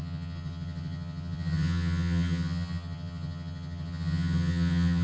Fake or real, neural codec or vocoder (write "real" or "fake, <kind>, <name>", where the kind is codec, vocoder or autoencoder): fake, vocoder, HiFi-GAN